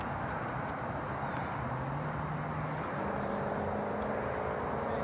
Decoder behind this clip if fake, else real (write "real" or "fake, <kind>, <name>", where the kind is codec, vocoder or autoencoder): real